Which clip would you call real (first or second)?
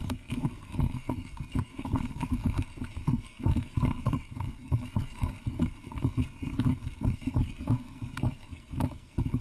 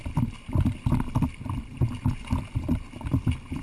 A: second